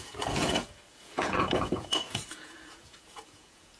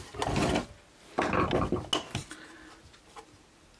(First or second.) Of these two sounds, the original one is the second